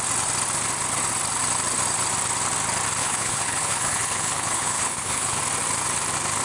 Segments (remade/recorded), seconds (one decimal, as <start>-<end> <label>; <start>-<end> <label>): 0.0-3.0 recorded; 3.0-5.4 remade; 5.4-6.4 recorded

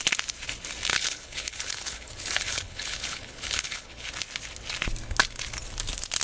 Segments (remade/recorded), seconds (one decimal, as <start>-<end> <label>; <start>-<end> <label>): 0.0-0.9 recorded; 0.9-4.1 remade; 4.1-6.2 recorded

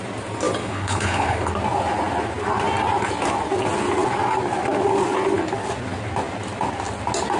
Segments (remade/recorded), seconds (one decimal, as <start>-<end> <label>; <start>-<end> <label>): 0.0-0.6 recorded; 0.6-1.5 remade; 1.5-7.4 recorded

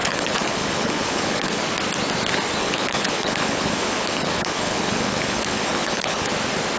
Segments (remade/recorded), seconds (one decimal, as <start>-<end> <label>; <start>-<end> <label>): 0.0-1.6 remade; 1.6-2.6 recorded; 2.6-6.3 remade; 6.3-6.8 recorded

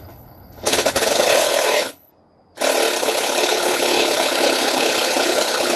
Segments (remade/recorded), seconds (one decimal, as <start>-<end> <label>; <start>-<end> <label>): 0.0-2.1 remade; 2.1-3.0 recorded; 3.0-5.8 remade